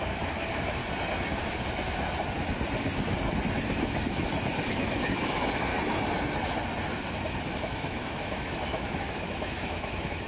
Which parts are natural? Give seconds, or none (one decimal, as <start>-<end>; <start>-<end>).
0.8-4.7; 5.7-7.6